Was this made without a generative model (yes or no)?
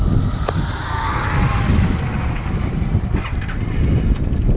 yes